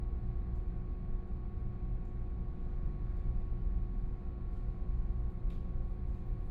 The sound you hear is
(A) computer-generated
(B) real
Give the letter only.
B